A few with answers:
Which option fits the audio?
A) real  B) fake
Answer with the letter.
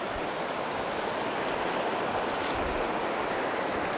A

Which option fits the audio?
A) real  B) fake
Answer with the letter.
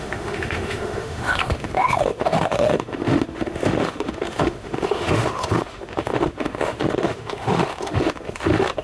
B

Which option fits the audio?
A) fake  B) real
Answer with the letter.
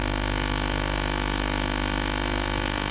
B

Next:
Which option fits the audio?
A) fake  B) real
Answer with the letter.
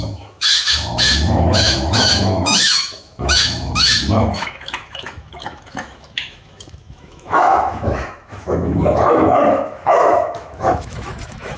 A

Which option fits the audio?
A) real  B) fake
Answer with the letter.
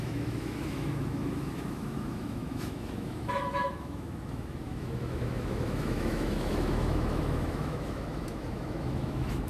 B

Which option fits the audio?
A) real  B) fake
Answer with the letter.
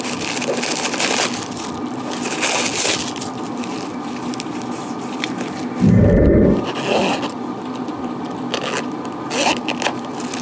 A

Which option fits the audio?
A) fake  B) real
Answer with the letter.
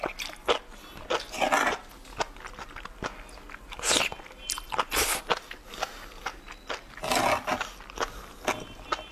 B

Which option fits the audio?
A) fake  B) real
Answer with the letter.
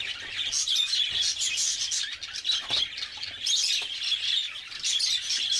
B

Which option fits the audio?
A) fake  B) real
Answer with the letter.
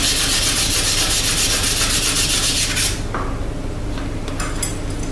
B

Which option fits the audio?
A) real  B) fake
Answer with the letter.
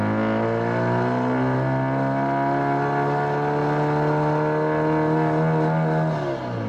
A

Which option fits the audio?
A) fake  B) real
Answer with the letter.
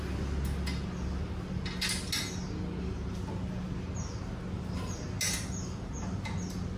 B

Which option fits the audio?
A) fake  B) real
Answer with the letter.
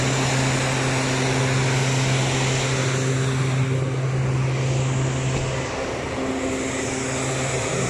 B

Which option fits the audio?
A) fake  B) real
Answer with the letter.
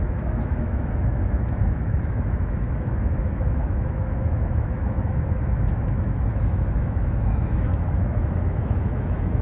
A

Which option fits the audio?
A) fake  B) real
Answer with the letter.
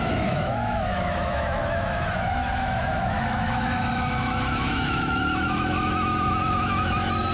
A